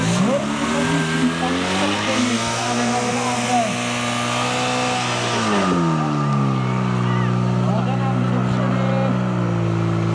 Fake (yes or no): no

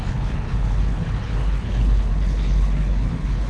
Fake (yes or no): yes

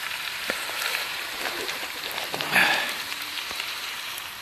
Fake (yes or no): yes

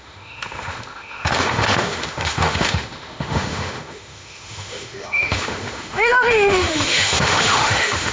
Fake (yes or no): yes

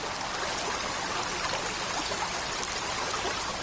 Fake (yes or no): no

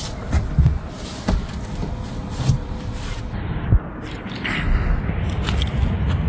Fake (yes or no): no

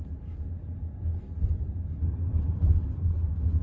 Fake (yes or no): no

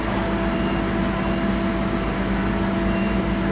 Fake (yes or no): no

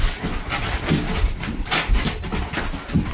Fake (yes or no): no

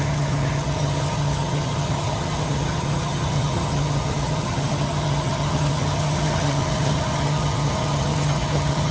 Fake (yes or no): yes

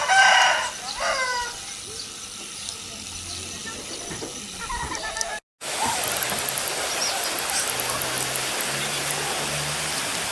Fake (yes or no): no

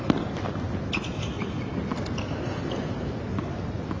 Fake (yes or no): no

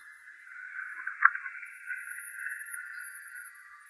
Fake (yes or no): no